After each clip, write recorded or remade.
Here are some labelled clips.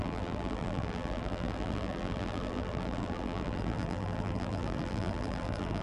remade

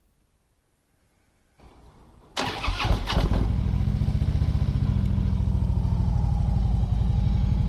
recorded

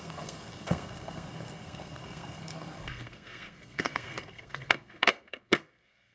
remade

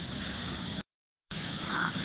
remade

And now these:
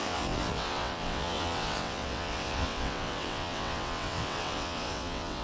remade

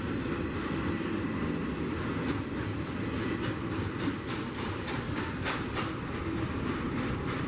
recorded